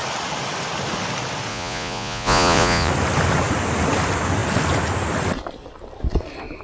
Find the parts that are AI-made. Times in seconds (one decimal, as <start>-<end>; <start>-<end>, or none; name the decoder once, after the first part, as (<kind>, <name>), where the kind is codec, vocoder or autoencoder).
1.5-2.9 (vocoder, Vocos)